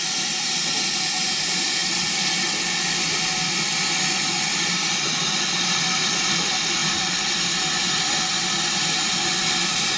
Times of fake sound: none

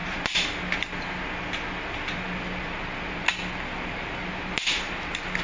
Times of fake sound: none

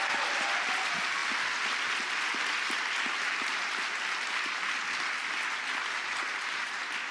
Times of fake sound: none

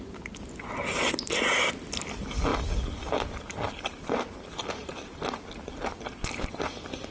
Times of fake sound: none